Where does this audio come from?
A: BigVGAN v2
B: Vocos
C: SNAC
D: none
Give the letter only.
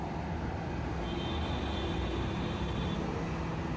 D